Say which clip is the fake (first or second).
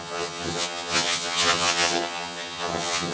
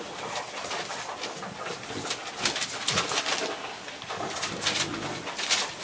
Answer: first